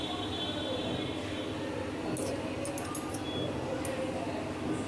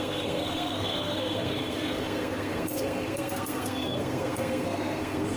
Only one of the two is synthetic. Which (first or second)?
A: second